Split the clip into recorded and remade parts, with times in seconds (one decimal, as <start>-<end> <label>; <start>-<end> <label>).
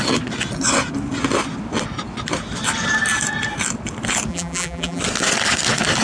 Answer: 0.0-4.3 recorded; 4.3-5.0 remade; 5.0-6.0 recorded